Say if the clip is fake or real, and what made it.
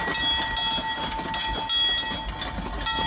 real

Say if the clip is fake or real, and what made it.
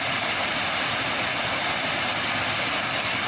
real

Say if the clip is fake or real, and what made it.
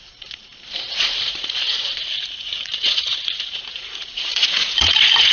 fake, vocoder, Vocos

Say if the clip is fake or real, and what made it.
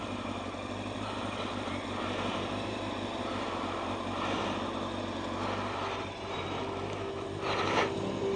real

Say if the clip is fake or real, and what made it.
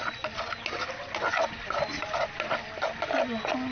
real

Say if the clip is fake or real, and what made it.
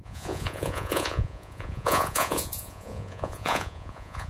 fake, vocoder, Vocos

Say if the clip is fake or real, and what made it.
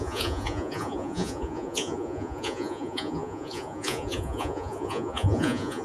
fake, vocoder, Vocos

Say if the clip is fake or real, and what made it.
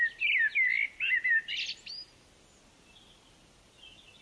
real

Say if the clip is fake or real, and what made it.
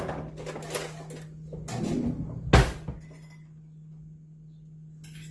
real